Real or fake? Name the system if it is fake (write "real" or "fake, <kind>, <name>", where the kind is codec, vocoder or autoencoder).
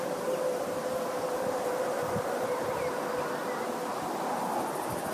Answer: real